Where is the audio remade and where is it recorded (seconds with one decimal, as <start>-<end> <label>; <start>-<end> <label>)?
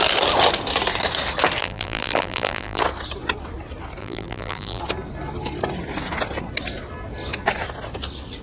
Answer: 0.0-1.6 recorded; 1.6-2.8 remade; 2.8-4.0 recorded; 4.0-4.8 remade; 4.8-8.4 recorded